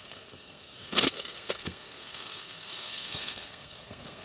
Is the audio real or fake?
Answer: fake